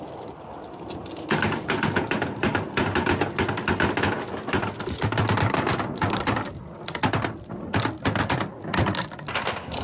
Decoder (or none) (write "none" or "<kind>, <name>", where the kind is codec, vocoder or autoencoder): none